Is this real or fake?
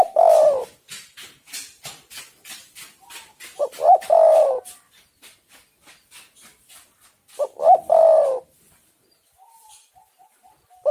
real